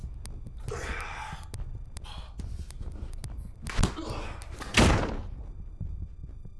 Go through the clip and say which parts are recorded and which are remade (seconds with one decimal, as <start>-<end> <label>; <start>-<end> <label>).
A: 0.0-4.7 recorded; 4.7-5.7 remade; 5.7-6.6 recorded